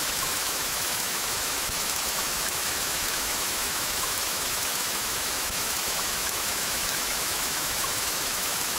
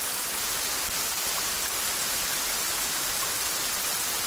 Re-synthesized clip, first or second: first